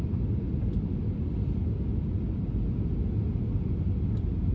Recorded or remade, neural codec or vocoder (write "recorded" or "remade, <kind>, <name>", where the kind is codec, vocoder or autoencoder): recorded